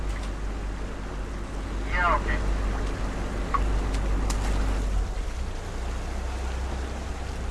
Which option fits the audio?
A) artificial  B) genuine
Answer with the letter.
B